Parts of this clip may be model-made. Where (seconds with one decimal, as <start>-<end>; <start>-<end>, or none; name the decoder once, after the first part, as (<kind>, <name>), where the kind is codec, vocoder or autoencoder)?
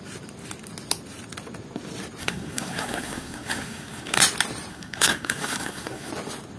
2.2-4.2 (codec, SNAC); 4.7-6.1